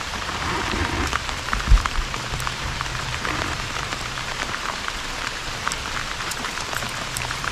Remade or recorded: remade